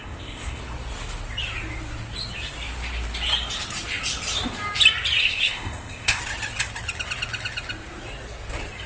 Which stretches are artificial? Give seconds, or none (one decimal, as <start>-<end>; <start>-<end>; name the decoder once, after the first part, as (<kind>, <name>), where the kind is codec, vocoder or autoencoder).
0.0-0.6 (codec, ZipCodec); 5.2-6.2